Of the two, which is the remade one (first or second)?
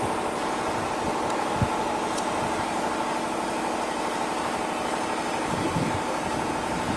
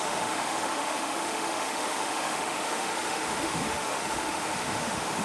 second